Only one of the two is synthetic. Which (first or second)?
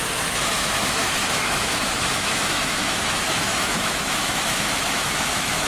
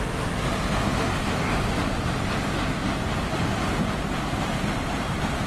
first